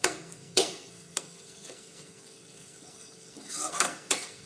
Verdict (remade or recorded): remade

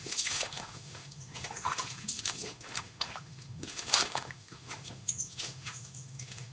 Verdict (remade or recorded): remade